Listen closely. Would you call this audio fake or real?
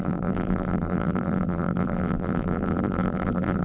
fake